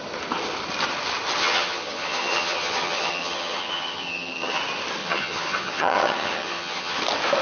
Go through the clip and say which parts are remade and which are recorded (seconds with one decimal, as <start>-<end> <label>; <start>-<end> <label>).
0.0-1.4 recorded; 1.4-4.6 remade; 4.6-5.0 recorded; 5.0-7.0 remade; 7.0-7.4 recorded